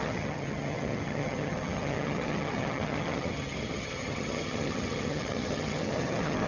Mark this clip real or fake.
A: fake